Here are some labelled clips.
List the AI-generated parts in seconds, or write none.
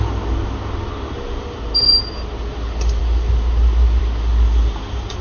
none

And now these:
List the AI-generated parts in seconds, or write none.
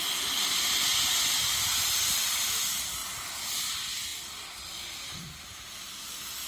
none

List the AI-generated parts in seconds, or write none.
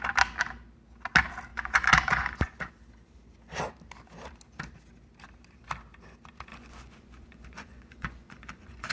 1.5-2.7 (vocoder, Vocos); 6.5-8.9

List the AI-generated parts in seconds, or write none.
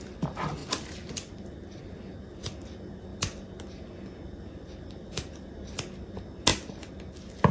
none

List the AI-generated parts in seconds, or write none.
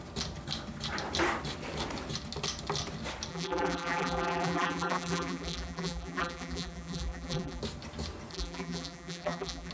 3.3-7.6 (vocoder, BigVGAN v2); 8.3-9.7